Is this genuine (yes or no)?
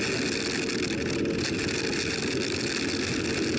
yes